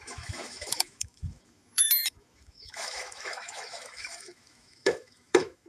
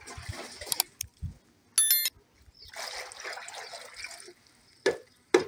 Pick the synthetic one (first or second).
first